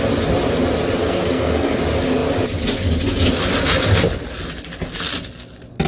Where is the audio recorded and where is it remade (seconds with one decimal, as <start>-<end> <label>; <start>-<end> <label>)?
0.0-1.0 recorded; 1.0-1.8 remade; 1.8-5.9 recorded